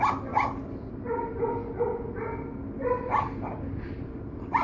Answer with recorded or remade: recorded